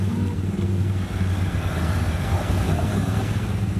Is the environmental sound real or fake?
fake